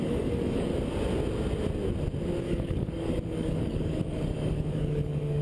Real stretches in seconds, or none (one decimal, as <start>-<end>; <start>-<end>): 0.7-2.4